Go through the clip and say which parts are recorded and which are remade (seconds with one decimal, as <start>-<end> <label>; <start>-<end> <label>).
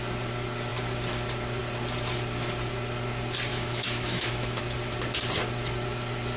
0.0-3.5 recorded; 3.5-4.6 remade; 4.6-6.4 recorded